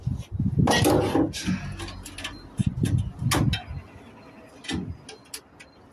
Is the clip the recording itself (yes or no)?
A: yes